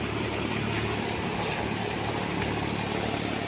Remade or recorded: recorded